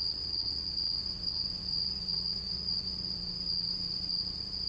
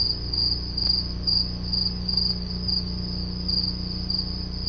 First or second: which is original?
second